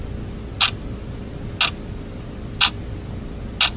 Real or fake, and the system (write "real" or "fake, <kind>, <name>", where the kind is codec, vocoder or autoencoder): real